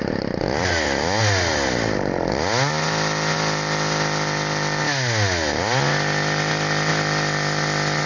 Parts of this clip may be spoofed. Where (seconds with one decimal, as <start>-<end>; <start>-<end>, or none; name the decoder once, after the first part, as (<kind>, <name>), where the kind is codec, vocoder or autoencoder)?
none